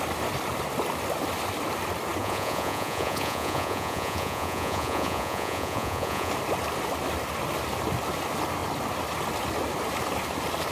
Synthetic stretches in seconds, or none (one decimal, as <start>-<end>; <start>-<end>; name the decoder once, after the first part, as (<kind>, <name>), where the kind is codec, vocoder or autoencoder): 2.2-6.3 (vocoder, Vocos)